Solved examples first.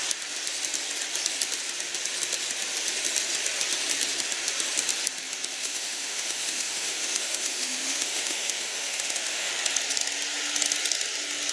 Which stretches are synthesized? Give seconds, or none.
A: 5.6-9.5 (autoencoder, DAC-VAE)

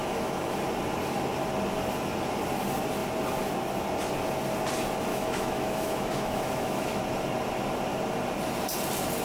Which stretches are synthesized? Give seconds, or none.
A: 0.0-0.6 (autoencoder, DAC-VAE); 5.1-7.0

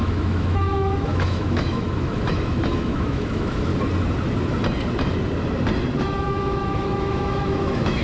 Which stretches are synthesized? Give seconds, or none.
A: 0.0-3.7 (autoencoder, DAC-VAE); 6.0-8.0